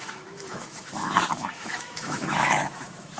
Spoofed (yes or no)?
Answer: yes